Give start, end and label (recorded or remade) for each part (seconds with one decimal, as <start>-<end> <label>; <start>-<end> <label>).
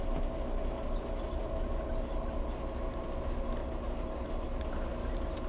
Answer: 0.0-5.5 recorded